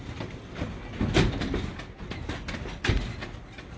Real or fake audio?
real